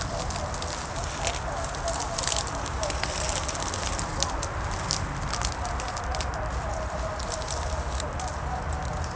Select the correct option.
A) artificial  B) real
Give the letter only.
B